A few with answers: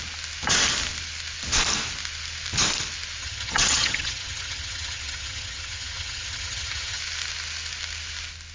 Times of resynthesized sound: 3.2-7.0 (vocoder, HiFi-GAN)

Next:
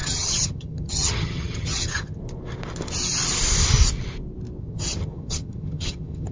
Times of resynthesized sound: 0.0-2.2 (vocoder, HiFi-GAN); 4.6-6.3

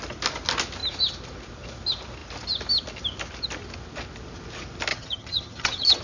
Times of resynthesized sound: 4.9-6.0 (vocoder, HiFi-GAN)